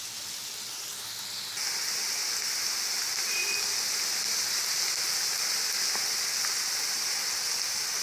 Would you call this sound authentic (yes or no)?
yes